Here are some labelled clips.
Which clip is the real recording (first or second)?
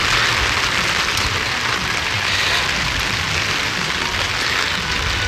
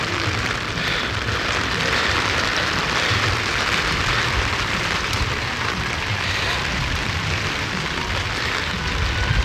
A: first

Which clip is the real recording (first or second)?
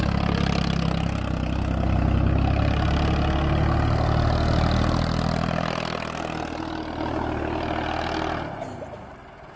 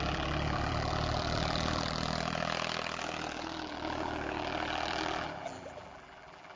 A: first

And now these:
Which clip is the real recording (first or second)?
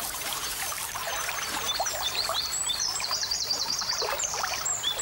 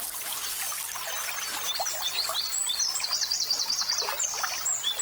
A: second